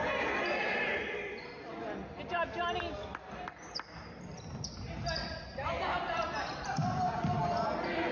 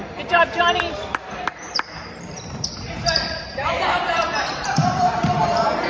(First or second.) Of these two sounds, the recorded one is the first